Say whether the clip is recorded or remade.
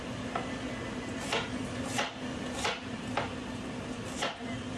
recorded